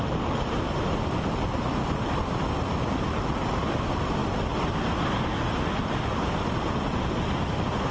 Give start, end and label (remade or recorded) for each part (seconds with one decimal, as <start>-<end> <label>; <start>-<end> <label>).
0.0-7.9 recorded